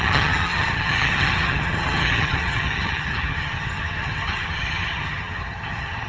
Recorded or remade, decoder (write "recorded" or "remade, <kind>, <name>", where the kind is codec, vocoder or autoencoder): remade, vocoder, HiFi-GAN